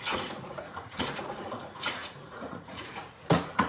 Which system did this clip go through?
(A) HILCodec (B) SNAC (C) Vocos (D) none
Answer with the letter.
C